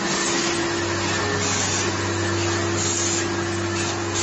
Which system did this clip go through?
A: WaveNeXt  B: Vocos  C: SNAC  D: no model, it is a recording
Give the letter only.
D